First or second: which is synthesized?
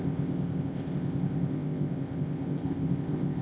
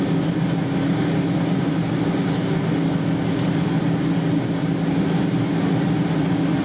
first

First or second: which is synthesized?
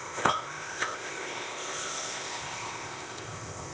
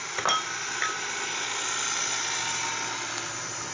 first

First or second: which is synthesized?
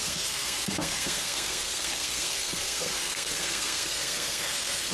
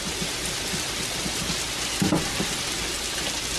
first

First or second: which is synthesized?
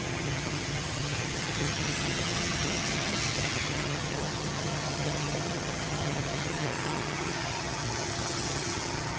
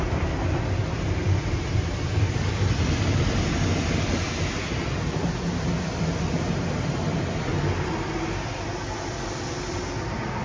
first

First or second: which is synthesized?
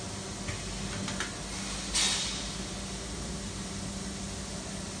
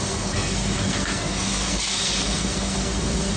second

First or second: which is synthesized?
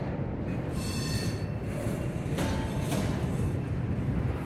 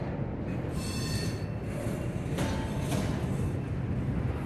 first